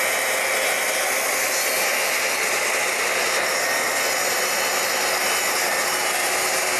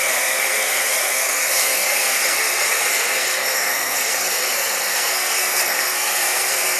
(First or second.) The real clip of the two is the first